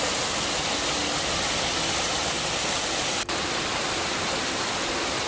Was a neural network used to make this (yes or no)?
no